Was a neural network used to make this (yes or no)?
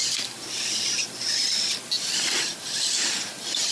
no